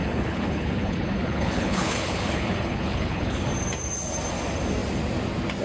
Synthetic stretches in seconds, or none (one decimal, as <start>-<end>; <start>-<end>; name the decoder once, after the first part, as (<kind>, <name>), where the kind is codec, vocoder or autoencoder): 0.0-3.4 (codec, HILCodec)